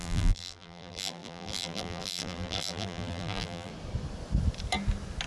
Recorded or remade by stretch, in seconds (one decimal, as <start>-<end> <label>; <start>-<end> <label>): 0.0-3.7 remade; 3.7-5.3 recorded

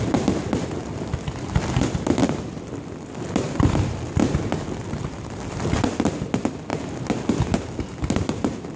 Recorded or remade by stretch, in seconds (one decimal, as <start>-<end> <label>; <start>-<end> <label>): 0.0-6.7 remade; 6.7-7.3 recorded; 7.3-8.8 remade

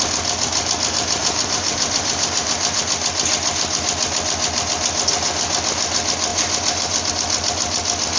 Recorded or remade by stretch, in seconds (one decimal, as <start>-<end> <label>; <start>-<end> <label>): 0.0-1.2 recorded; 1.2-2.8 remade; 2.8-6.3 recorded; 6.3-7.1 remade; 7.1-8.2 recorded

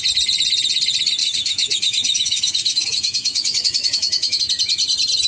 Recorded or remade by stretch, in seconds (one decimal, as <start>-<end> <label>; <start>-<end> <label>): 0.0-1.2 recorded; 1.2-4.4 remade; 4.4-5.3 recorded

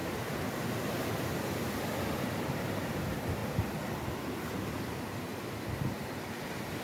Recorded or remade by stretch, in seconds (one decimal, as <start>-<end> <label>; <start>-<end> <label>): 0.0-2.2 recorded; 2.2-3.4 remade; 3.4-4.2 recorded; 4.2-5.3 remade; 5.3-5.9 recorded; 5.9-6.8 remade